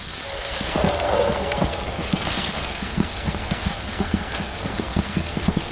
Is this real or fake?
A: fake